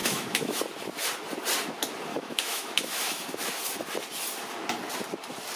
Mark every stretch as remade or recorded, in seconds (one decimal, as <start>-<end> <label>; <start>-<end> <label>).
0.0-0.6 remade; 0.6-2.1 recorded; 2.1-3.6 remade; 3.6-5.6 recorded